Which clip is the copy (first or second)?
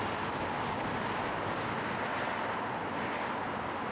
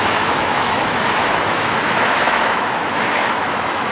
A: second